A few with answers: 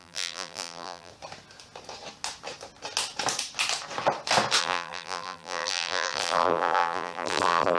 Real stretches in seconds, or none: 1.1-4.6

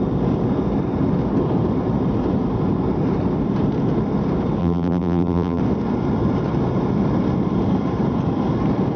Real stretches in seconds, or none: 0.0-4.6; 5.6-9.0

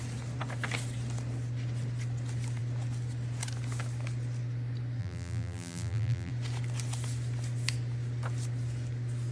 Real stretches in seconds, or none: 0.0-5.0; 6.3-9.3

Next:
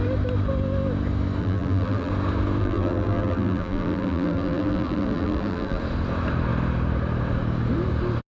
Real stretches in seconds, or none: 0.0-1.4; 2.1-2.6; 5.8-8.3